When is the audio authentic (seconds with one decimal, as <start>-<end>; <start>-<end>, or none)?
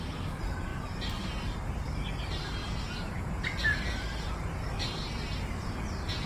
0.0-0.7; 2.1-6.3